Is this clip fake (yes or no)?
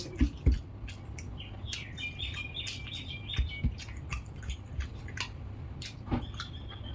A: no